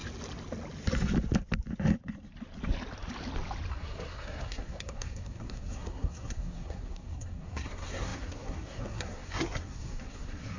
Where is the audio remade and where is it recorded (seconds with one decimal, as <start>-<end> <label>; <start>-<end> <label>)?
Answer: 0.0-3.7 recorded; 3.7-10.6 remade